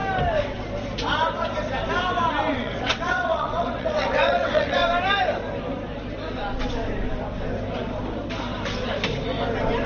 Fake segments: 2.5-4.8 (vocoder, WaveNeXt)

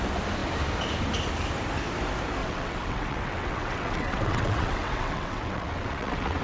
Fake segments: 2.4-6.4 (vocoder, WaveNeXt)